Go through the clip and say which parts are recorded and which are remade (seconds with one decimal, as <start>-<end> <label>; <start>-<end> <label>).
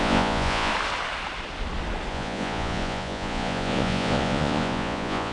0.0-0.7 remade; 0.7-2.1 recorded; 2.1-5.3 remade